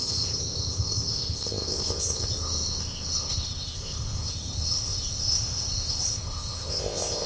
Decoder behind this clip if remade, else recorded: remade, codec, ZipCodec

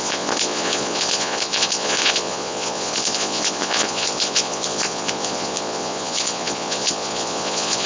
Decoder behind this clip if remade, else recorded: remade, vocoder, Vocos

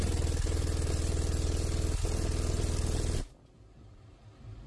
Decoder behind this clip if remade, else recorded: recorded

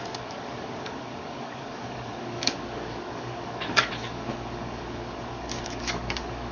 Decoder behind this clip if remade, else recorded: remade, codec, DAC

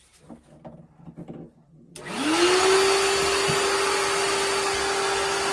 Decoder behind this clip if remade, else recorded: recorded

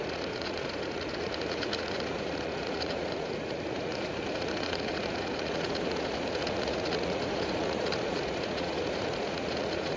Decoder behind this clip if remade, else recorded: remade, vocoder, Vocos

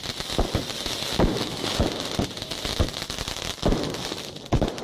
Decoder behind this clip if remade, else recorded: recorded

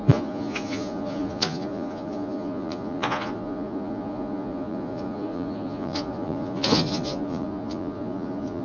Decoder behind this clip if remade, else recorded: remade, vocoder, Vocos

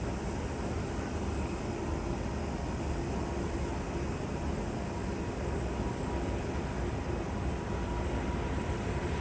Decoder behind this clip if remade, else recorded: recorded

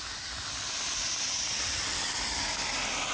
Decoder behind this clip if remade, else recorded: remade, vocoder, BigVGAN v2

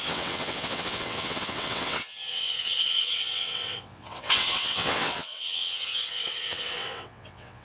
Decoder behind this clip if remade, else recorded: remade, vocoder, WaveNeXt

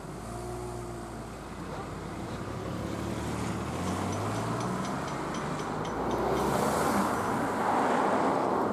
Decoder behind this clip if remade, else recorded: recorded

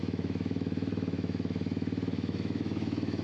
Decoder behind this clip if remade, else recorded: remade, autoencoder, DAC-VAE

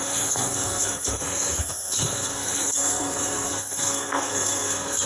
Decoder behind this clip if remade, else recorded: remade, codec, SNAC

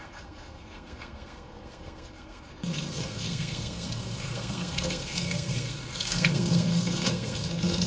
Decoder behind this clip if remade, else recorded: remade, codec, SNAC